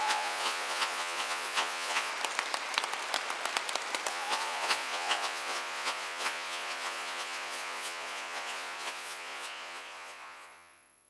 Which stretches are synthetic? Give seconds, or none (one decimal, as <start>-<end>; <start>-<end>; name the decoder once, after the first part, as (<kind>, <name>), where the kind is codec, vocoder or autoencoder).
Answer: 0.0-2.1 (vocoder, Vocos); 4.1-11.1